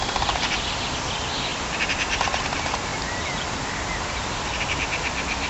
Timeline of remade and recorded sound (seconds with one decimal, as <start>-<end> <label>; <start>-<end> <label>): 0.0-5.5 recorded